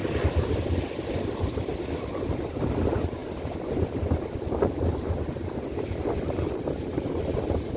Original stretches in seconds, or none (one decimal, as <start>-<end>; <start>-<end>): 0.0-7.8

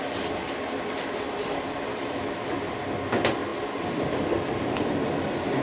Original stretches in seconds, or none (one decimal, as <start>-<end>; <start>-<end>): 0.0-1.9; 2.5-5.6

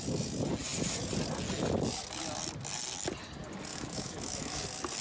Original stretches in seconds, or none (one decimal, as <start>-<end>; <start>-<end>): 0.0-3.7; 4.6-5.0

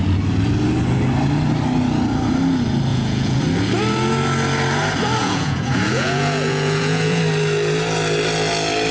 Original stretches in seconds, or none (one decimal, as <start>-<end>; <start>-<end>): 0.0-2.9; 3.4-5.2; 7.2-8.9

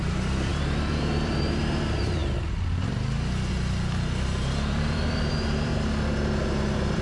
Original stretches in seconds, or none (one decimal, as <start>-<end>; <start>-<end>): 5.7-6.4

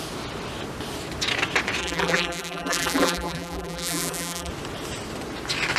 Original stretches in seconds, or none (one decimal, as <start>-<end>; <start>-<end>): 0.0-1.8; 4.5-5.8